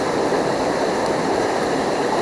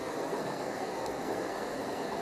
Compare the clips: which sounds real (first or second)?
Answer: first